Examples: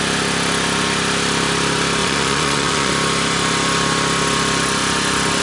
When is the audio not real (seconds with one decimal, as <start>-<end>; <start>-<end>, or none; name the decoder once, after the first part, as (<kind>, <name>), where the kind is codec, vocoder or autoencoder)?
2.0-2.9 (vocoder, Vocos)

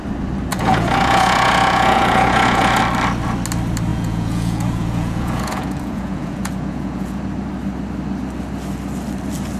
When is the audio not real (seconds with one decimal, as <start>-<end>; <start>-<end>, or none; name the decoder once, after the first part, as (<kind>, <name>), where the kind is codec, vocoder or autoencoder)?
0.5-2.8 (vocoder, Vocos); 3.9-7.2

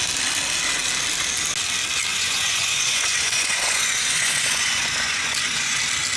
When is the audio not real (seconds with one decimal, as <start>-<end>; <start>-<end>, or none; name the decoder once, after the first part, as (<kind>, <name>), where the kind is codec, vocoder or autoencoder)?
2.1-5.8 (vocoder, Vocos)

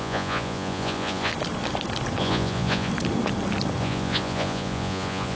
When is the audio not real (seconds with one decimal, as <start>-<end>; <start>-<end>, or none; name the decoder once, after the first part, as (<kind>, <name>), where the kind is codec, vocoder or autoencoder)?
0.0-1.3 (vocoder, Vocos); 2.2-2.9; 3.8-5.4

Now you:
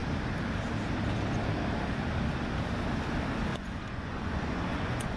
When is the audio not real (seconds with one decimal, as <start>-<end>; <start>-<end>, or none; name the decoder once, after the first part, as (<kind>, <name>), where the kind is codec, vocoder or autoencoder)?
3.5-5.2 (vocoder, Vocos)